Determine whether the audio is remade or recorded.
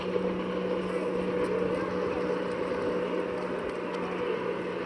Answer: recorded